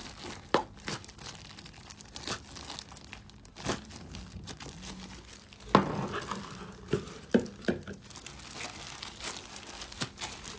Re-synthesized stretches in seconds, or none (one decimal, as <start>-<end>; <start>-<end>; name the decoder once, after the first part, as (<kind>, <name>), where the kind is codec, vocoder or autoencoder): none